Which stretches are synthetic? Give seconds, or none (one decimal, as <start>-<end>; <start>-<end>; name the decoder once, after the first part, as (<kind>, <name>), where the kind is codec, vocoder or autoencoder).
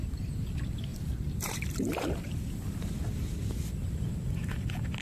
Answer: 0.9-3.9 (vocoder, BigVGAN v2)